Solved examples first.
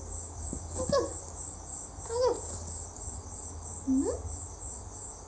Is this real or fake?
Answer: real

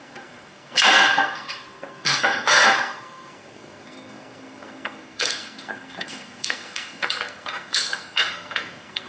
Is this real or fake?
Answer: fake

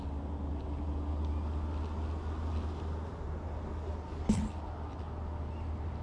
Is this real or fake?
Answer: real